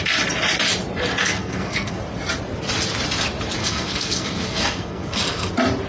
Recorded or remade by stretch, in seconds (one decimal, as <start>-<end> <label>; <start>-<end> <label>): 0.0-1.2 recorded; 1.2-2.0 remade; 2.0-3.6 recorded; 3.6-5.5 remade; 5.5-5.9 recorded